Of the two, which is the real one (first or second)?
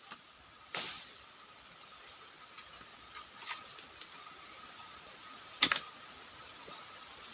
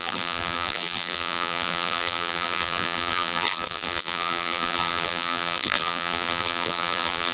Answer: first